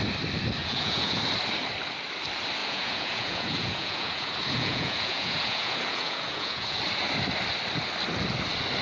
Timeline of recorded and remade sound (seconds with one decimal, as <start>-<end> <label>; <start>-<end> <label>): 0.0-0.6 recorded; 0.6-1.2 remade; 1.2-2.6 recorded; 2.6-6.8 remade; 6.8-8.8 recorded